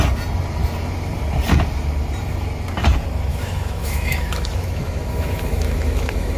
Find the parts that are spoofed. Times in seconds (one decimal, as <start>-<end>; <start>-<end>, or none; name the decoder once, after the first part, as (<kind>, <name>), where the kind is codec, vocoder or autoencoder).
3.3-6.4 (autoencoder, DAC-VAE)